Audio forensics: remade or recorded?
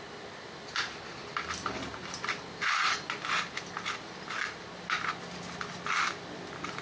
recorded